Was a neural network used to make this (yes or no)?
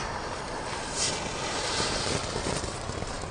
yes